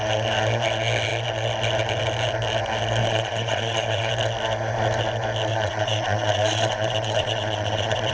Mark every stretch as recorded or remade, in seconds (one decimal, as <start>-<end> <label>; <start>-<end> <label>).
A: 0.0-3.0 recorded; 3.0-4.1 remade; 4.1-5.5 recorded; 5.5-8.1 remade

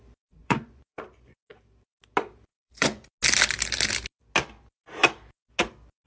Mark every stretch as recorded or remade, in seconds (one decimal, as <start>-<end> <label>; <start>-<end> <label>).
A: 0.0-0.4 recorded; 0.4-1.5 remade; 1.5-2.5 recorded; 2.5-3.1 remade; 3.1-6.1 recorded

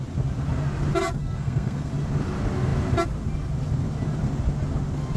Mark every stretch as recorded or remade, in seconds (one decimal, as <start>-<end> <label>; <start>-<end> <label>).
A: 0.0-1.2 recorded; 1.2-1.9 remade; 1.9-5.2 recorded

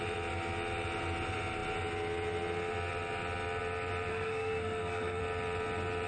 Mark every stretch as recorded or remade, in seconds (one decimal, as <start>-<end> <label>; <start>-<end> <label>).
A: 0.0-4.1 recorded; 4.1-5.2 remade; 5.2-6.1 recorded